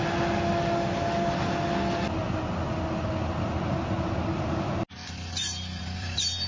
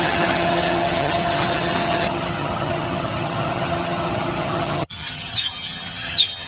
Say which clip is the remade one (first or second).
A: second